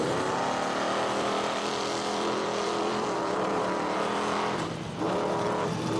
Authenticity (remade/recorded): remade